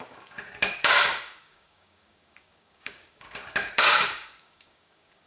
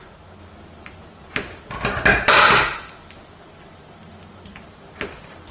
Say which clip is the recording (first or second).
second